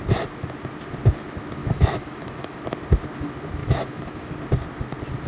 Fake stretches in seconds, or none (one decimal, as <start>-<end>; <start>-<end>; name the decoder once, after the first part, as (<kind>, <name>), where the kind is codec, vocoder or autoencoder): 1.6-2.6 (autoencoder, DAC-VAE); 3.6-4.3